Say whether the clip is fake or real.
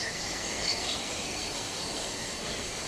fake